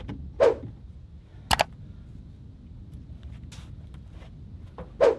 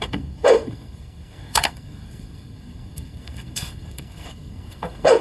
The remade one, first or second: second